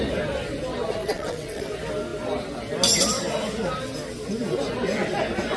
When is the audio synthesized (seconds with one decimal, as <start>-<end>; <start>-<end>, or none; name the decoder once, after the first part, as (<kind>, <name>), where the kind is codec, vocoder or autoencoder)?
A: 1.0-1.7 (vocoder, WaveNeXt)